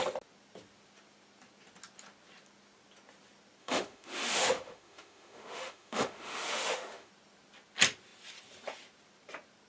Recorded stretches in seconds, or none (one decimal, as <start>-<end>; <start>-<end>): 0.0-3.6; 7.1-9.7